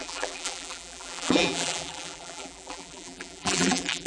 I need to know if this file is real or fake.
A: fake